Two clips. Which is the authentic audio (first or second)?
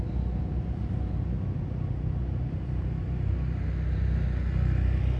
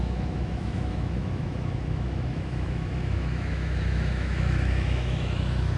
first